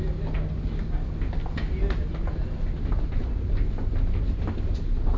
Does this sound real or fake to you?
real